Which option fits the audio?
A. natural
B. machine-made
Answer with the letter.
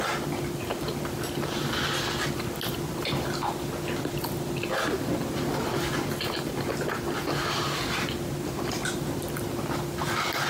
A